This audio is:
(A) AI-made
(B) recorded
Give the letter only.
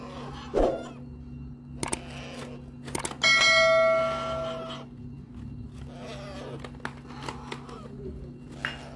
B